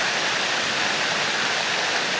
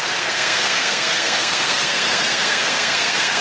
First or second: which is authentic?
first